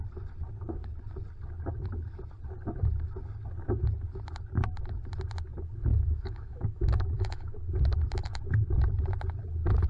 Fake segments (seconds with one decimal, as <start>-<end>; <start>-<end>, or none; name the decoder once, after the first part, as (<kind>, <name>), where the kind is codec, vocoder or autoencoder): 5.9-7.7 (autoencoder, DAC-VAE)